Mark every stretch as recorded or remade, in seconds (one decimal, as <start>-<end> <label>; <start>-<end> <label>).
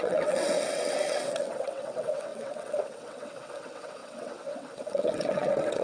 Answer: 0.0-5.8 remade